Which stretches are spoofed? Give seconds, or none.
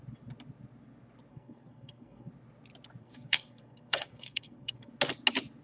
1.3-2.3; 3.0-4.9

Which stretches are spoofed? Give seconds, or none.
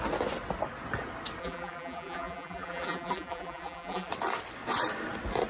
1.4-4.1